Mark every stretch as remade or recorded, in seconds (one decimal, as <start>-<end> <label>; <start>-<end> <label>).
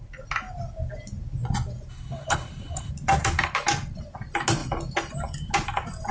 0.0-1.9 recorded; 1.9-2.9 remade; 2.9-6.1 recorded